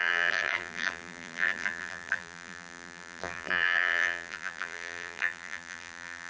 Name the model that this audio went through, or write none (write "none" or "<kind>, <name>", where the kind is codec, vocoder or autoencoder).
vocoder, BigVGAN v2